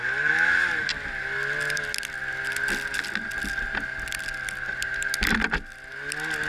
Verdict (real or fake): real